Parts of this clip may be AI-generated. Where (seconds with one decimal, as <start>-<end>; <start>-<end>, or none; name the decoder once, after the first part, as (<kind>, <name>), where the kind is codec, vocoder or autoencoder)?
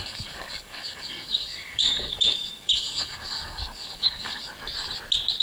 0.0-4.5 (codec, DAC)